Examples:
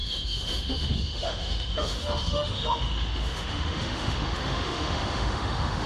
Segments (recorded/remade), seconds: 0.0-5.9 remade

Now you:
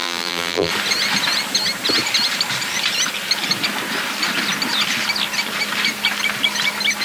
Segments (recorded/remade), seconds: 0.0-0.7 remade; 0.7-7.0 recorded